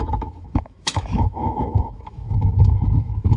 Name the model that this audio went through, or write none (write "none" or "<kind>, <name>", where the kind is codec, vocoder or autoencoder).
autoencoder, DAC-VAE